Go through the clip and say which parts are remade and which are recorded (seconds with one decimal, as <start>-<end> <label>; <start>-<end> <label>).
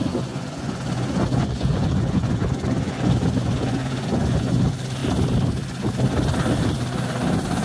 0.0-4.6 remade; 4.6-7.6 recorded